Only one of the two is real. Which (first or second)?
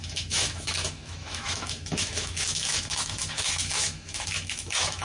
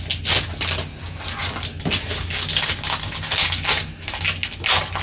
second